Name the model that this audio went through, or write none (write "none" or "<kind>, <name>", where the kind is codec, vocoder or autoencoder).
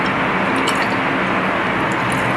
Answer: none